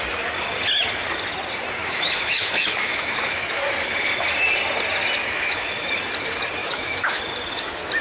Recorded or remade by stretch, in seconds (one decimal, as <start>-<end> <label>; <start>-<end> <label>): 0.0-1.8 recorded; 1.8-3.6 remade; 3.6-5.2 recorded; 5.2-5.9 remade; 5.9-6.6 recorded; 6.6-7.2 remade; 7.2-8.0 recorded